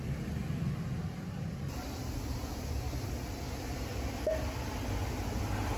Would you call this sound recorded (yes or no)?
yes